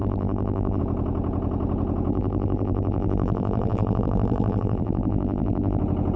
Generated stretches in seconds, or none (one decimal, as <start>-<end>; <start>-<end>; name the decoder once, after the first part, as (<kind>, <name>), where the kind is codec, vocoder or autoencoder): 0.0-0.8 (vocoder, BigVGAN v2); 2.1-5.8